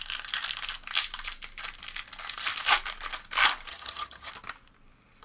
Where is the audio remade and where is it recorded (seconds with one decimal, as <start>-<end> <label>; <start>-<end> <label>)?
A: 0.0-3.7 recorded; 3.7-4.3 remade; 4.3-5.2 recorded